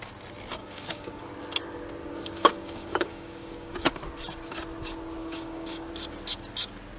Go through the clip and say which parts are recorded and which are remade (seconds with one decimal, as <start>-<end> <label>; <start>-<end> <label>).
0.0-0.6 recorded; 0.6-1.2 remade; 1.2-2.0 recorded; 2.0-4.0 remade; 4.0-5.2 recorded; 5.2-5.9 remade; 5.9-7.0 recorded